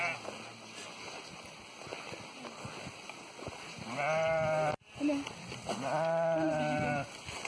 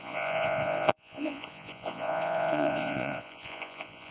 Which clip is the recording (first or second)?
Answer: first